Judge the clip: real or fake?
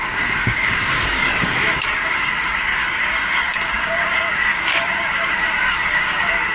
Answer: fake